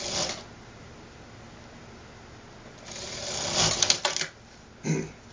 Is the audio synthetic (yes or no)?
no